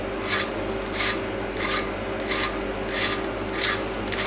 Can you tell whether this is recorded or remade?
recorded